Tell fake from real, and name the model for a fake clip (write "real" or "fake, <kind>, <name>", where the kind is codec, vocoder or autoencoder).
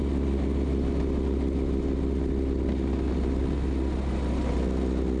real